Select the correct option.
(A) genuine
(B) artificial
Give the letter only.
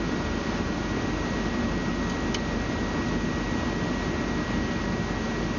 A